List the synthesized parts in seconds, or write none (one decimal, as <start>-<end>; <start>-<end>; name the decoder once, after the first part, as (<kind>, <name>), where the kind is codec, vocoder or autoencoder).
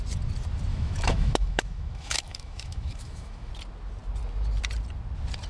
0.7-3.5 (autoencoder, DAC-VAE)